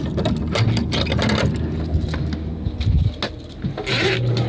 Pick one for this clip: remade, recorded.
recorded